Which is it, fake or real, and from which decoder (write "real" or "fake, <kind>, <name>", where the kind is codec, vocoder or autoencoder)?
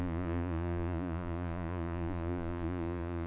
fake, vocoder, Vocos